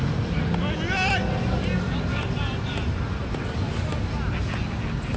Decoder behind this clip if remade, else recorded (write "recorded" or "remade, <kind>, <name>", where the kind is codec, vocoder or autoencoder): recorded